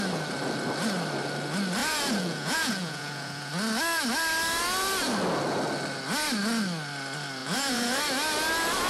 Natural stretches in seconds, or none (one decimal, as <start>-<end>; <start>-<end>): 0.0-1.8; 3.5-7.4; 8.0-8.9